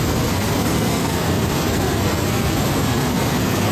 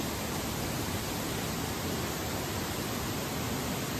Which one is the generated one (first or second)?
first